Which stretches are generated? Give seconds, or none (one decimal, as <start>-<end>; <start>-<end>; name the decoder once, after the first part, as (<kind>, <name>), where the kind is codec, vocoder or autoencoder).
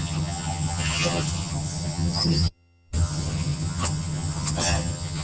0.0-5.2 (vocoder, HiFi-GAN)